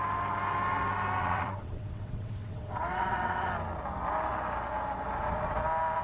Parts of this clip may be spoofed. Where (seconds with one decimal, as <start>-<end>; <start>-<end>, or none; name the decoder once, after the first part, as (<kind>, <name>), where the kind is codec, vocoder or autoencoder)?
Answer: 1.2-3.5 (vocoder, WaveNeXt)